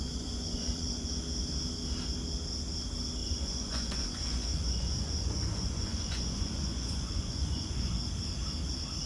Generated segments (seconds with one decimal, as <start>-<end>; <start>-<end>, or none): 0.0-1.1; 3.2-7.9